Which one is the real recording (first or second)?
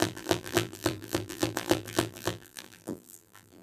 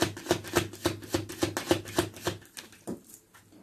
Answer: second